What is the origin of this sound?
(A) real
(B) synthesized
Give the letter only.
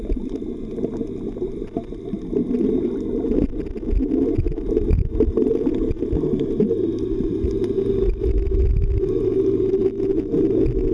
A